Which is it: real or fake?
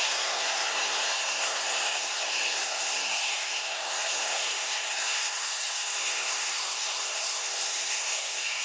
fake